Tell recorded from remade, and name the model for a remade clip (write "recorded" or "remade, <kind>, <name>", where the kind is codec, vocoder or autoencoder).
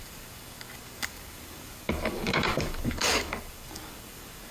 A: remade, codec, DAC